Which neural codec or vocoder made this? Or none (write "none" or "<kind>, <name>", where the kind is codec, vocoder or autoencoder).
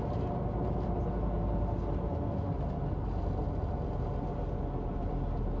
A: none